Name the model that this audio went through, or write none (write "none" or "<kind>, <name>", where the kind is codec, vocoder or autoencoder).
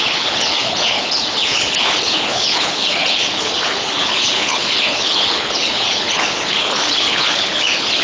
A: codec, HILCodec